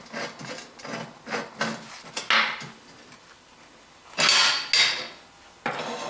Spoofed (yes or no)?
no